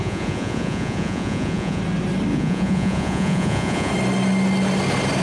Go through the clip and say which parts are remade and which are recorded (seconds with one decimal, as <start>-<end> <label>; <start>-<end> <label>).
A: 0.0-1.8 remade; 1.8-2.3 recorded; 2.3-3.9 remade; 3.9-5.2 recorded